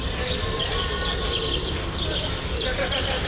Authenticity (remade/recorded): recorded